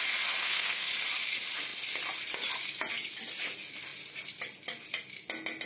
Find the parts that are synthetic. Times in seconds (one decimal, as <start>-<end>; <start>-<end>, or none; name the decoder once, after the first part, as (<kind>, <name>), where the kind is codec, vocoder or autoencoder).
0.4-0.9 (codec, SNAC)